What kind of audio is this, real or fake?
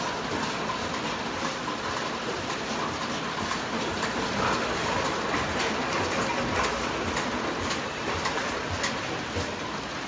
real